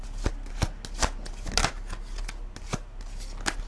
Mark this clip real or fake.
real